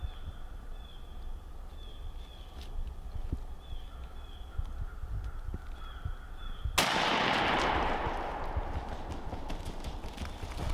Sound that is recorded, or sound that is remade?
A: recorded